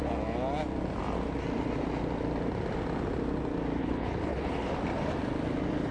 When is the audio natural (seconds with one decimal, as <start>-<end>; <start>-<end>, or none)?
0.0-3.8; 4.7-5.9